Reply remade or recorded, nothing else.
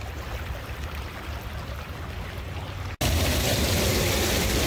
recorded